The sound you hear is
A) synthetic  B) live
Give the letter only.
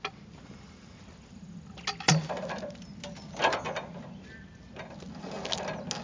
B